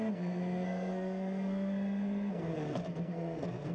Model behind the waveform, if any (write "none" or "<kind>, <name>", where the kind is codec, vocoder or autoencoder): codec, SNAC